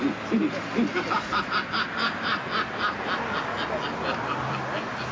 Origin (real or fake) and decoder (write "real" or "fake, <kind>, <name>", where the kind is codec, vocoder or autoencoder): real